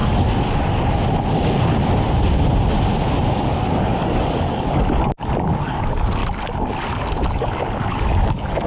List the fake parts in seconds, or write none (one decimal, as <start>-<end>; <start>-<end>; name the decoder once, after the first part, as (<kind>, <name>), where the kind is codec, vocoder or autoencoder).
3.3-6.2 (codec, DAC); 6.9-8.7